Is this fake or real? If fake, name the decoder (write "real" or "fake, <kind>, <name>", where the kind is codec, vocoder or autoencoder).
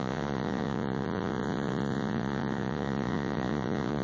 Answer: fake, vocoder, Vocos